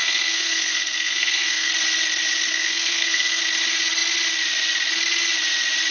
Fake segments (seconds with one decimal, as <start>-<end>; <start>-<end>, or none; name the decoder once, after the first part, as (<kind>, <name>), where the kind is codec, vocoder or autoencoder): 0.0-1.7 (codec, SNAC); 2.5-3.4